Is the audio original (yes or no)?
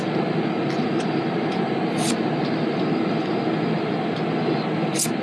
yes